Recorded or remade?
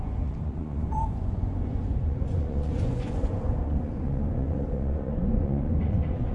remade